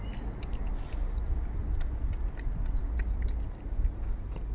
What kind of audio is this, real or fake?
real